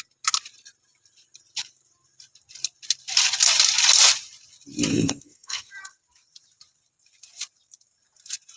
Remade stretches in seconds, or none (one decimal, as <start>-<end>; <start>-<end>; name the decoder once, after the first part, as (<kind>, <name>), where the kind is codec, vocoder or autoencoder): 4.9-5.7 (codec, SNAC)